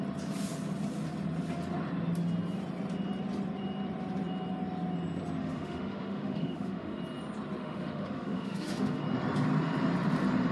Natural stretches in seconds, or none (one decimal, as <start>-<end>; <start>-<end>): 0.0-5.4; 7.0-7.6; 9.0-10.5